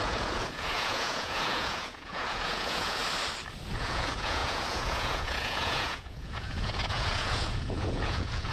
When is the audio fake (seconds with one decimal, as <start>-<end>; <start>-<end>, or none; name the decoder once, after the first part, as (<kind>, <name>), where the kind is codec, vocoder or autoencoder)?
0.0-3.0 (vocoder, Vocos); 3.7-8.5